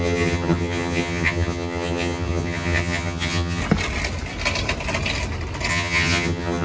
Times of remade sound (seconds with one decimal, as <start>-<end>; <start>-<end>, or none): 0.0-3.6; 5.7-6.6